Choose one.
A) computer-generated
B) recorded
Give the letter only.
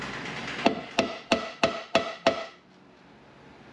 B